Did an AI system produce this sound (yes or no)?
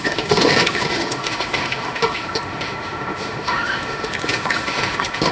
yes